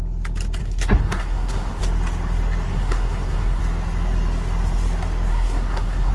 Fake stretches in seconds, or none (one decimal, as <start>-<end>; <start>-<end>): 0.6-1.8; 2.7-3.6; 5.3-6.1